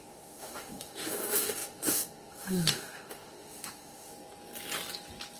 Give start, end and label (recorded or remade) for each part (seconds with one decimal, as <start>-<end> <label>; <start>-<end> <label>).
0.0-4.1 remade; 4.1-5.4 recorded